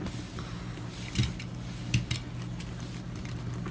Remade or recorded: recorded